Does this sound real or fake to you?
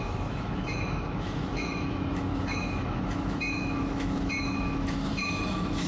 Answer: fake